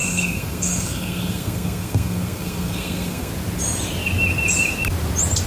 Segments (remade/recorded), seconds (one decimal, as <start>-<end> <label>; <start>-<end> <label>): 0.0-3.3 remade; 3.3-5.5 recorded